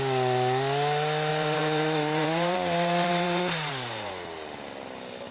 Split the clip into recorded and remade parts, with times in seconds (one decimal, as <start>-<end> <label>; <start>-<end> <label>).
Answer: 0.0-1.3 recorded; 1.3-4.1 remade; 4.1-5.3 recorded